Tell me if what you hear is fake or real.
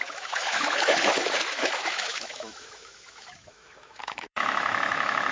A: fake